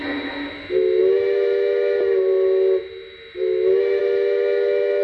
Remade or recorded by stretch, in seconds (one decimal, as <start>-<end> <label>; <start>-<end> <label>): 0.0-5.0 recorded